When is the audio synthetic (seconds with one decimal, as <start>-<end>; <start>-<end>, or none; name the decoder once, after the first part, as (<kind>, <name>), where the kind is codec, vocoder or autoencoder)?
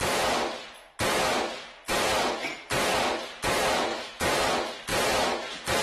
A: 3.9-4.4 (autoencoder, DAC-VAE)